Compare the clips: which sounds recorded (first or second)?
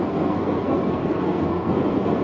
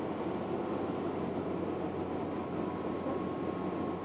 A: second